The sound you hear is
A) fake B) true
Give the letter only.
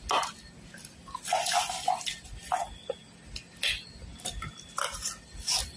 B